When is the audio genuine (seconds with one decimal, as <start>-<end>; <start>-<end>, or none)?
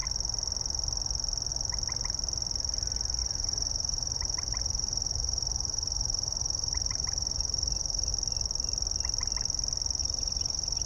0.0-3.2; 8.1-10.0